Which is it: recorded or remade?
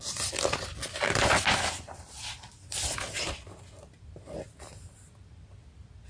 recorded